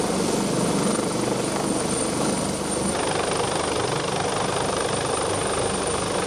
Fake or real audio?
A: real